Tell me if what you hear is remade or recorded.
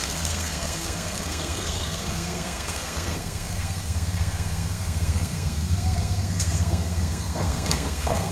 remade